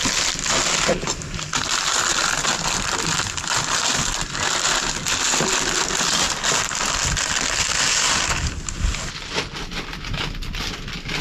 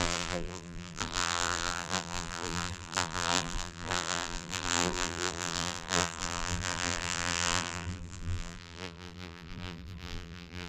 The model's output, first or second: second